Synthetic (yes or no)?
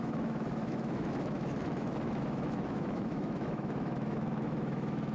yes